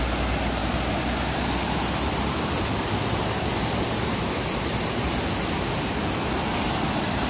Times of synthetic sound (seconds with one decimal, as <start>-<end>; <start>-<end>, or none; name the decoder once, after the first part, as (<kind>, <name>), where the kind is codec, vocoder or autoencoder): none